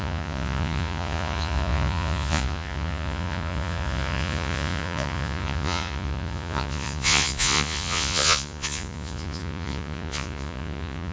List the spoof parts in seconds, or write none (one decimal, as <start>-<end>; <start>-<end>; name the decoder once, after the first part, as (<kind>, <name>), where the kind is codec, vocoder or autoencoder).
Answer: 0.0-11.1 (vocoder, Vocos)